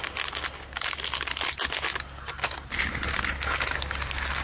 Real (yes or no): yes